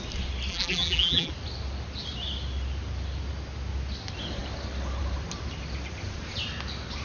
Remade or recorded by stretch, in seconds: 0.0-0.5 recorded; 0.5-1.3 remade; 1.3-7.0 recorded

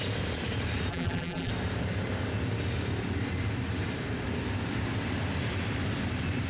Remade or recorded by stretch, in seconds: 0.0-0.9 recorded; 0.9-1.5 remade; 1.5-6.5 recorded

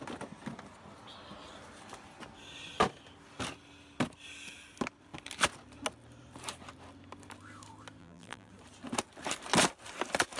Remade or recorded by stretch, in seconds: 0.0-8.0 recorded; 8.0-8.5 remade; 8.5-10.4 recorded

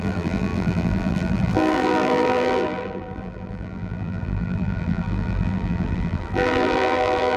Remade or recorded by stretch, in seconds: 0.0-7.4 remade

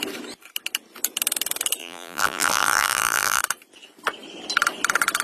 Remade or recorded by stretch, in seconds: 0.0-1.8 recorded; 1.8-3.4 remade; 3.4-5.2 recorded

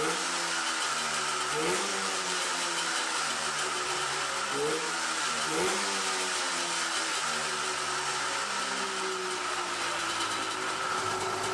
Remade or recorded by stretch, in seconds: 0.0-1.9 recorded; 1.9-4.3 remade; 4.3-11.5 recorded

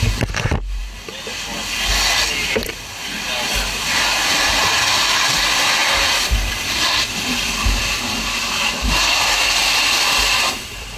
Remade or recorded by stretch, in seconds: 0.0-5.8 recorded; 5.8-7.8 remade; 7.8-9.6 recorded; 9.6-10.1 remade; 10.1-11.0 recorded